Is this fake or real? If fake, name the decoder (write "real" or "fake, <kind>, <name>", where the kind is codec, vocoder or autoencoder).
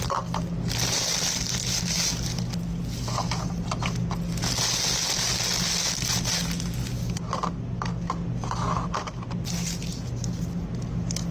real